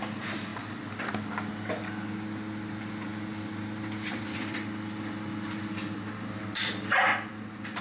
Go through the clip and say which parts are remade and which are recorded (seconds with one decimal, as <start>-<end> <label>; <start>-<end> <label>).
0.0-3.1 recorded; 3.1-5.0 remade; 5.0-7.8 recorded